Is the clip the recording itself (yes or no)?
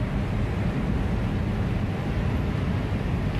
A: yes